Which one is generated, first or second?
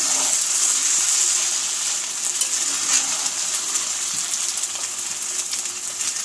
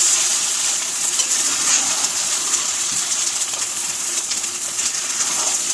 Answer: second